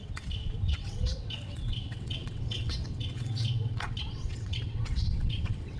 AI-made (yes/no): yes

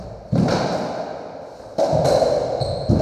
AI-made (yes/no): no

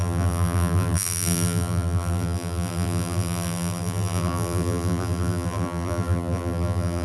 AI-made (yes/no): yes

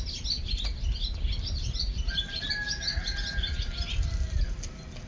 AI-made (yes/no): no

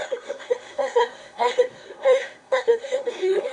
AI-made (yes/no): yes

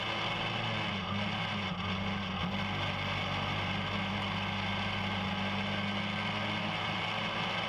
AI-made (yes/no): no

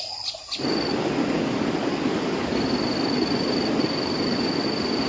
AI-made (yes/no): no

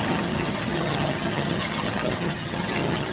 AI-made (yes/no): yes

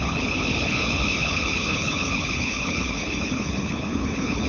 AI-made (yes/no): yes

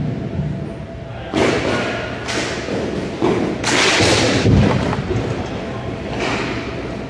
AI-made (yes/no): no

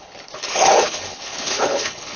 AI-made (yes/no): yes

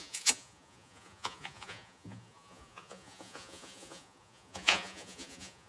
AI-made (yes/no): yes